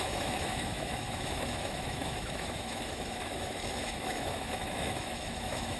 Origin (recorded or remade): remade